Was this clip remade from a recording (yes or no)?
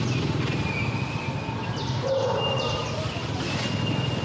no